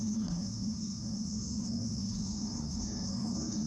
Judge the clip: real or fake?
fake